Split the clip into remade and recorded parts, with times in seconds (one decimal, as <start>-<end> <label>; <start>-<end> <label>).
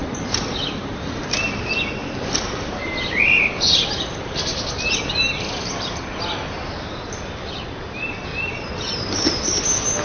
0.0-1.2 remade; 1.2-2.0 recorded; 2.0-6.0 remade; 6.0-8.3 recorded; 8.3-9.6 remade; 9.6-10.0 recorded